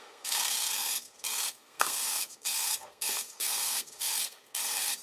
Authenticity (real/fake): fake